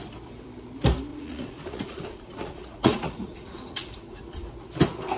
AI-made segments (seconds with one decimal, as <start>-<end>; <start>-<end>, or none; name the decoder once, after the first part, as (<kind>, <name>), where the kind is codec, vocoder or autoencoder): 1.1-4.2 (vocoder, Vocos)